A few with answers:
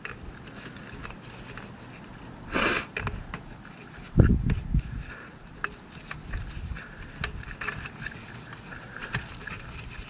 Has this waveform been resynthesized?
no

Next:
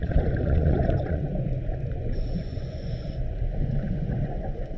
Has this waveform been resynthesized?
yes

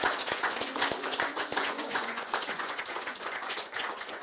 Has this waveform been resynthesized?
yes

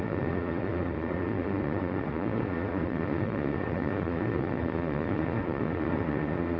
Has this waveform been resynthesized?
yes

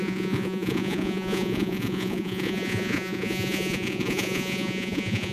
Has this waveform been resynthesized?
yes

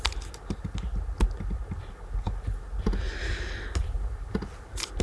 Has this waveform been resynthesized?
no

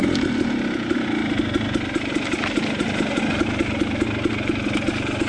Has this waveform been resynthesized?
no